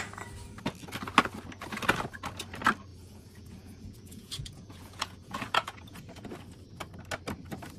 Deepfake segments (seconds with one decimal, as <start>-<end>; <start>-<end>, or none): 2.9-6.3